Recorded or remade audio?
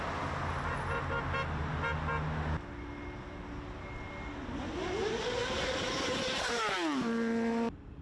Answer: recorded